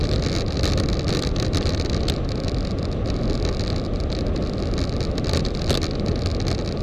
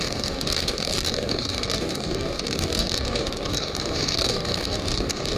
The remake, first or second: second